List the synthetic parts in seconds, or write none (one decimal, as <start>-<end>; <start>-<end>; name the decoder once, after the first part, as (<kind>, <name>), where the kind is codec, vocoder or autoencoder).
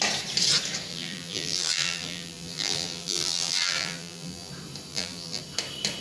0.9-4.5 (vocoder, BigVGAN v2); 4.9-5.4